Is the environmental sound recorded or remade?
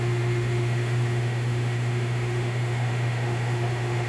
remade